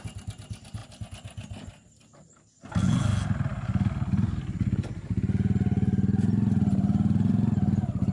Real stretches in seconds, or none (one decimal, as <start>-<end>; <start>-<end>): 0.0-8.1